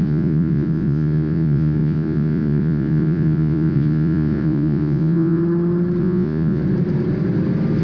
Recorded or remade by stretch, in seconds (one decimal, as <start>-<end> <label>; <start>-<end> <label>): 0.0-5.4 remade; 5.4-6.0 recorded; 6.0-6.6 remade; 6.6-7.8 recorded